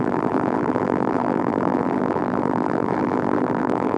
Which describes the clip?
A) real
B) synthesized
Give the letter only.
B